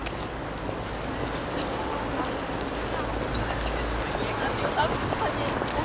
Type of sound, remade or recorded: recorded